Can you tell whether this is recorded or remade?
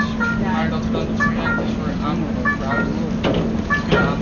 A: recorded